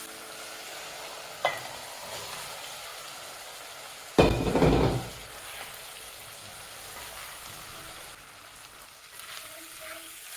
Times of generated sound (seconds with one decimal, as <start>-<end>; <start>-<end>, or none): none